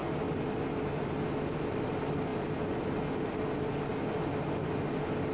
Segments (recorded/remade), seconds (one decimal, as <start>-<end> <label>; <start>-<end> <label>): 0.0-5.3 recorded